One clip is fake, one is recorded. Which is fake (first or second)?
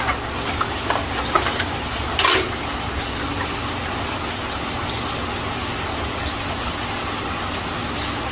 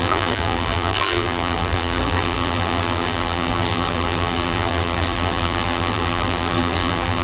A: second